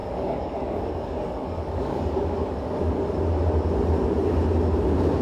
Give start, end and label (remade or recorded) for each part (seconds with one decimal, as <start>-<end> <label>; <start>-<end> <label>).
0.0-3.1 remade; 3.1-5.2 recorded